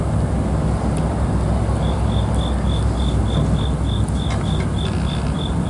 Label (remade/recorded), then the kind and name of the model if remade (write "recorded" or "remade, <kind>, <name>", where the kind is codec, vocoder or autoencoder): recorded